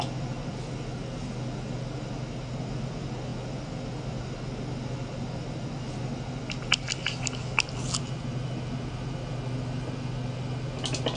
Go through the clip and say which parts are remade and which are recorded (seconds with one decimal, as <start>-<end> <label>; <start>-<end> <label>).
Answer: 0.0-11.2 recorded